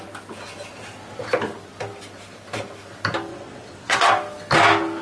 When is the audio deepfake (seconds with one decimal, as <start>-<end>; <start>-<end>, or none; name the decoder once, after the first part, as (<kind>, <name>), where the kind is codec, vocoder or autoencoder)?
3.3-4.1 (vocoder, WaveNeXt)